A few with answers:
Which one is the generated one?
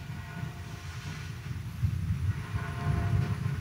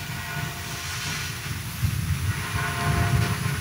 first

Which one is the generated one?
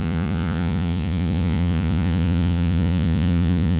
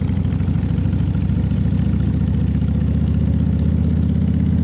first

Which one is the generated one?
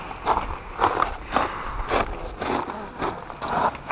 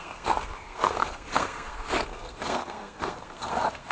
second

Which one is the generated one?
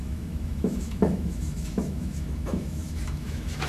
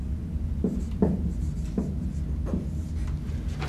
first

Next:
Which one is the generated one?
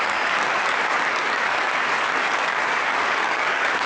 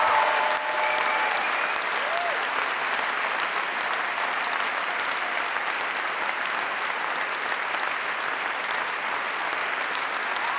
first